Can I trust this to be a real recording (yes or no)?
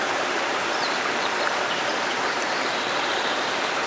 no